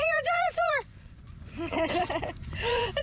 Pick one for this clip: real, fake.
fake